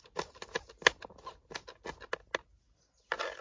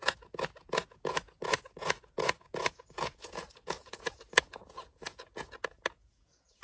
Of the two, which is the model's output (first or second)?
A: second